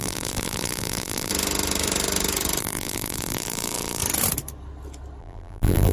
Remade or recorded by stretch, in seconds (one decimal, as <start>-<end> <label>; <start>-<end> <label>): 0.0-1.3 remade; 1.3-2.6 recorded; 2.6-4.0 remade; 4.0-5.2 recorded; 5.2-5.9 remade